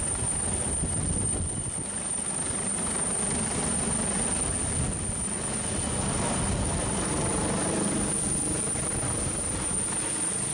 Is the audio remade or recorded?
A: recorded